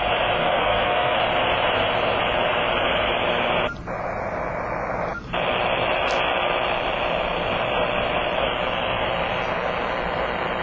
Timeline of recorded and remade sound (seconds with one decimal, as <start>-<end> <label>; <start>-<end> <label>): 0.0-0.4 recorded; 0.4-1.2 remade; 1.2-10.6 recorded